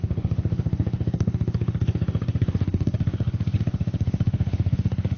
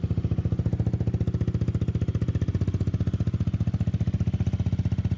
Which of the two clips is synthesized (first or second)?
first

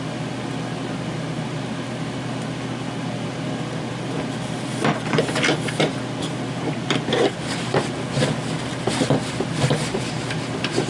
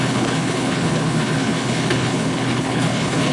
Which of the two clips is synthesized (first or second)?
second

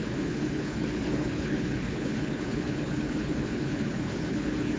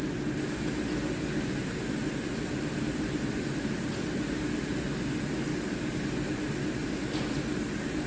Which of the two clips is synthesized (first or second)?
first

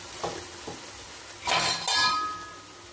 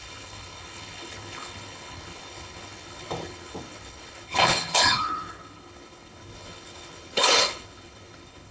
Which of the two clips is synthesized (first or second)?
second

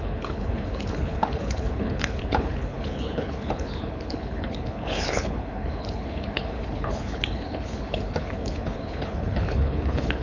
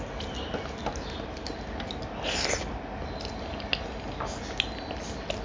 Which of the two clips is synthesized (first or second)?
first